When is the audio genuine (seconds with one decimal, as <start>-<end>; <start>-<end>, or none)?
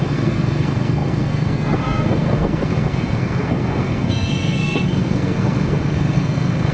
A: none